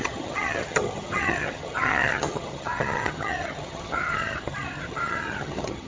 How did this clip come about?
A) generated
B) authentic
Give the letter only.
A